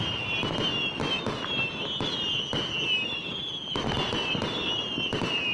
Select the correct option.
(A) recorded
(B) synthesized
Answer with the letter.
A